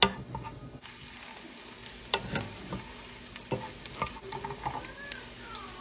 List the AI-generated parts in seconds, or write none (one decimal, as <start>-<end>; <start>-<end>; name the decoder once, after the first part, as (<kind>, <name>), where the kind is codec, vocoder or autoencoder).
none